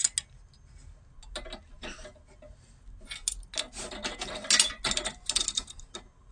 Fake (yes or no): no